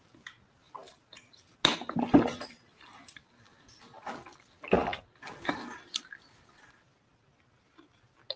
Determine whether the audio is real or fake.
real